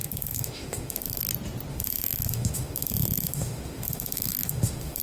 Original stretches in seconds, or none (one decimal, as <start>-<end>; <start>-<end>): 1.2-1.7